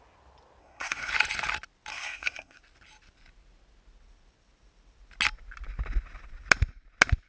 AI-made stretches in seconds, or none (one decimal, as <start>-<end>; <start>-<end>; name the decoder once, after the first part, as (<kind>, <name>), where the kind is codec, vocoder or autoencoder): 0.6-1.1 (codec, SNAC); 1.9-2.6